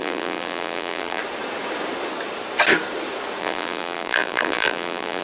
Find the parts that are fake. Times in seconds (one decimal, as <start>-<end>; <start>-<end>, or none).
0.0-1.2; 3.4-5.2